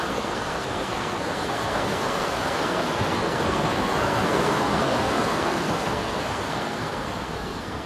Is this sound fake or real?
fake